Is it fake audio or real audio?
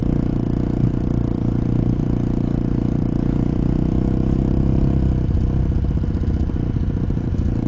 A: real